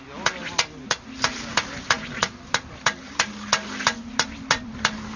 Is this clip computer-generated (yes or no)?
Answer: no